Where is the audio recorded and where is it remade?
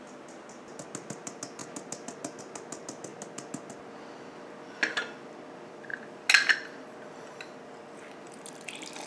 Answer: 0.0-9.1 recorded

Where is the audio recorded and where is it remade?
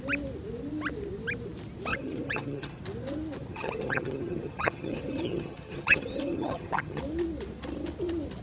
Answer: 0.0-1.9 recorded; 1.9-2.8 remade; 2.8-3.5 recorded; 3.5-7.0 remade; 7.0-8.4 recorded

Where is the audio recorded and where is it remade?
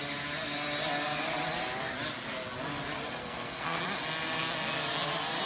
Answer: 0.0-3.2 recorded; 3.2-3.8 remade; 3.8-5.5 recorded